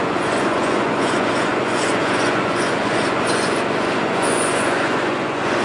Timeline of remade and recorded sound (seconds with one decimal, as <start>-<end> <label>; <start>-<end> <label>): 0.0-5.6 remade